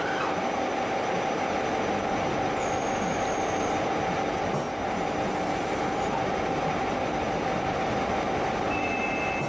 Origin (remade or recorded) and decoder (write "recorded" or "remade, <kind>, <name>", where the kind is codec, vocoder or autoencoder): recorded